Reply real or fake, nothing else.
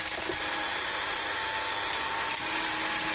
real